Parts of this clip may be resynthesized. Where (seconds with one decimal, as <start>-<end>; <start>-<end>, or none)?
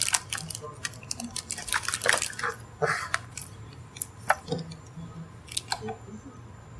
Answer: 3.2-3.8